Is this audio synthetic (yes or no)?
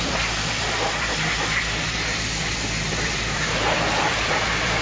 yes